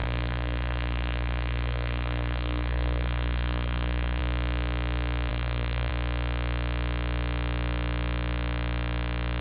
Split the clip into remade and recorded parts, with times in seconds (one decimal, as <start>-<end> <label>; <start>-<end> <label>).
0.0-4.2 remade; 4.2-5.3 recorded; 5.3-5.9 remade; 5.9-9.4 recorded